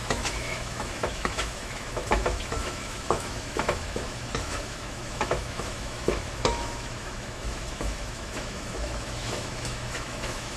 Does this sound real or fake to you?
fake